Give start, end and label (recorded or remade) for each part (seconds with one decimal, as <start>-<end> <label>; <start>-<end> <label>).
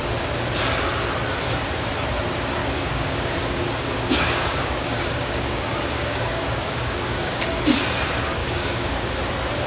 0.0-2.6 recorded; 2.6-7.6 remade; 7.6-8.4 recorded; 8.4-9.1 remade; 9.1-9.7 recorded